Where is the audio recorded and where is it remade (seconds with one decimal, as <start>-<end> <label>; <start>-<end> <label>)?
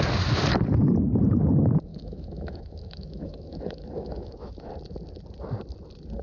0.0-1.9 recorded; 1.9-4.7 remade; 4.7-6.2 recorded